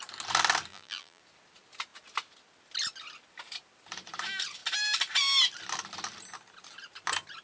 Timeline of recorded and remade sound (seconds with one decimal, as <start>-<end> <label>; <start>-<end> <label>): 0.0-0.7 recorded; 0.7-1.2 remade; 1.2-7.4 recorded